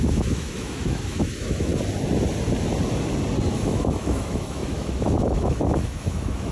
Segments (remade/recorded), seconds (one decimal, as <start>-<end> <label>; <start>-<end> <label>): 0.0-1.7 remade; 1.7-3.5 recorded; 3.5-6.5 remade